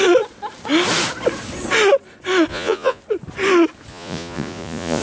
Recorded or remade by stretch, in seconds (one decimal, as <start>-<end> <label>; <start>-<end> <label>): 0.0-2.5 recorded; 2.5-3.0 remade; 3.0-3.9 recorded; 3.9-5.0 remade